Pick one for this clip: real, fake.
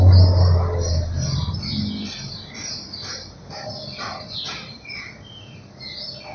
real